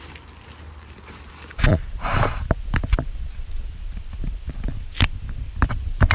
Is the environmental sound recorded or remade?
recorded